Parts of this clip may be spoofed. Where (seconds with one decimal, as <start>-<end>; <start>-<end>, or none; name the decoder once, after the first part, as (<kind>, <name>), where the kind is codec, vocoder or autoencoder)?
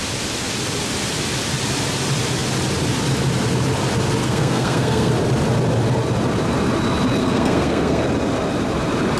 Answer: 4.2-5.1 (codec, SNAC); 7.2-8.0